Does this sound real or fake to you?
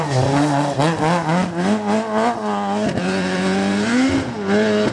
real